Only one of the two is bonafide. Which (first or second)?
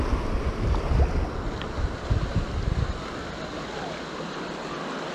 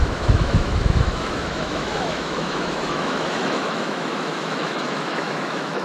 first